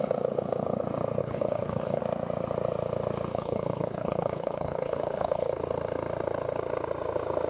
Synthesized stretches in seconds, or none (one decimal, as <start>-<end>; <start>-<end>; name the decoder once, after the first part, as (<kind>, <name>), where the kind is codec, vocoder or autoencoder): 1.2-2.0 (codec, HILCodec); 3.3-5.6